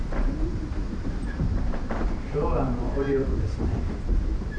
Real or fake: fake